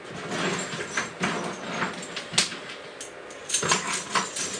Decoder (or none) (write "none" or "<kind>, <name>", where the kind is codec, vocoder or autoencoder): none